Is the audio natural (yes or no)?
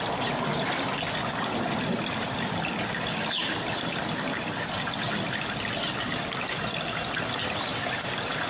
yes